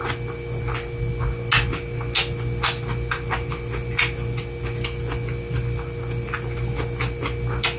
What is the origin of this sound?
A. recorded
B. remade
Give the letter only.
A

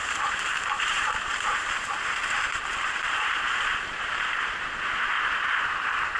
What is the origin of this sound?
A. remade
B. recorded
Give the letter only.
A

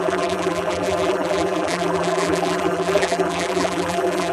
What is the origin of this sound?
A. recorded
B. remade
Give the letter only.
B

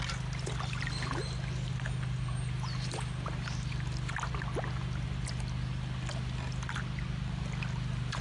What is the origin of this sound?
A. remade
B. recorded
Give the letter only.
B